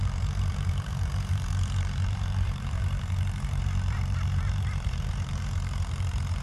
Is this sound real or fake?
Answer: fake